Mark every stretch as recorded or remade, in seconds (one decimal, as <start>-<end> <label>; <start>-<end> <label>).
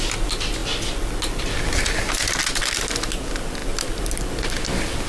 0.0-5.1 recorded